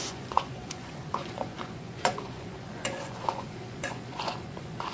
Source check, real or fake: fake